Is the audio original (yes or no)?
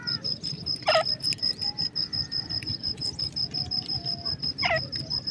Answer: yes